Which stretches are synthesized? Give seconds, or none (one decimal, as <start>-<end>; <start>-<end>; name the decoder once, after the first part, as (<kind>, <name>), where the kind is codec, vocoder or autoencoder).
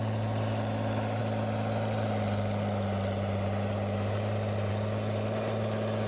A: none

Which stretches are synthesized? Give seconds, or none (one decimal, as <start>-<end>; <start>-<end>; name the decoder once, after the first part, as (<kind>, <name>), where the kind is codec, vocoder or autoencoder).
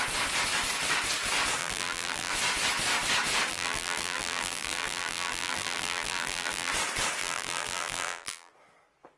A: 1.6-2.3 (vocoder, BigVGAN v2); 3.5-6.7; 7.2-8.5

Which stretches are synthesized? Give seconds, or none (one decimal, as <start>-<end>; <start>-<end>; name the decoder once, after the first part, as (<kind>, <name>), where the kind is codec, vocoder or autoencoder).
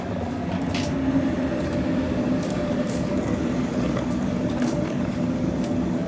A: 0.0-0.4 (codec, DAC); 1.6-6.1